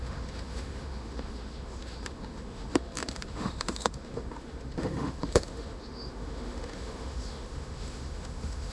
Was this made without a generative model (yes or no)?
no